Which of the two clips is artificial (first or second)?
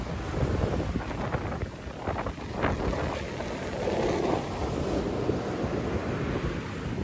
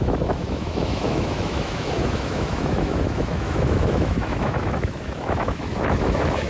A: second